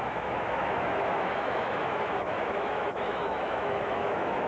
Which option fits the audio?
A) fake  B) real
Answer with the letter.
A